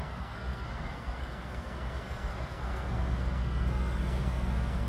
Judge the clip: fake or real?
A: fake